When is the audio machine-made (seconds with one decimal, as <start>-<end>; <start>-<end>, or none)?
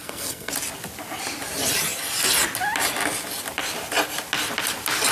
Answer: 0.0-0.5